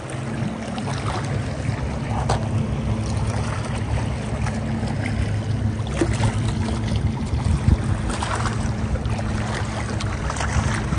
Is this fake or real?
real